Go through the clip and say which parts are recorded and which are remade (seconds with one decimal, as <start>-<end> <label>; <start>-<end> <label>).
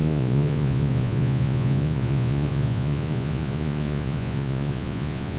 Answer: 0.0-5.4 remade